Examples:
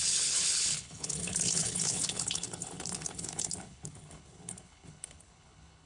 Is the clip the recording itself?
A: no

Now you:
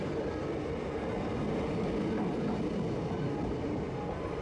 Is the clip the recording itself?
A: yes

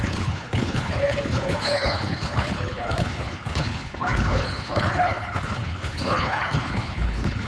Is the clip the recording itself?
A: no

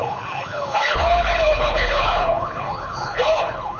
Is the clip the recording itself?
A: no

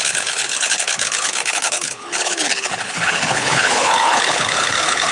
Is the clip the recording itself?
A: no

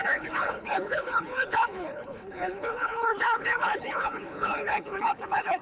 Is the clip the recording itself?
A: no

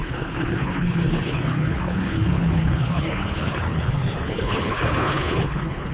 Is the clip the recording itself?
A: no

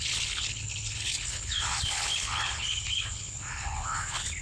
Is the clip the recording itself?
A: no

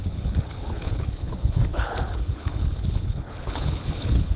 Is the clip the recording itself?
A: no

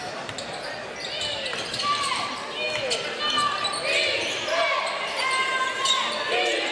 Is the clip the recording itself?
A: yes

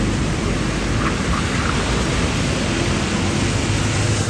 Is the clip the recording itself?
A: yes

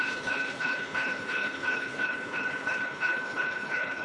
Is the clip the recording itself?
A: no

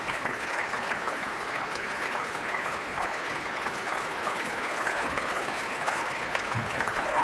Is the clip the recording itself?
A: no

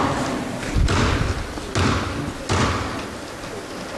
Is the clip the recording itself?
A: yes